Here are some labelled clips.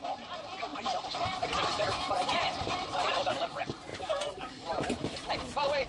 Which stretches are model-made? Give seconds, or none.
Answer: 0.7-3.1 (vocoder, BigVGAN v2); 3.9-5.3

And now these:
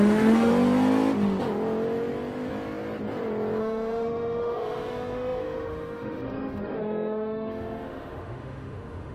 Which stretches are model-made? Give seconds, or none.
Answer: 0.0-0.5 (autoencoder, DAC-VAE); 3.6-9.1